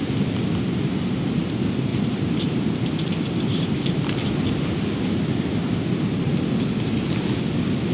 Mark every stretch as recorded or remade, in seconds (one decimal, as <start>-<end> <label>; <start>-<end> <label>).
0.0-7.9 recorded